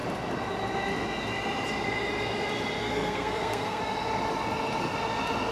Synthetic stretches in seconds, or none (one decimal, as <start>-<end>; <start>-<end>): 2.8-3.8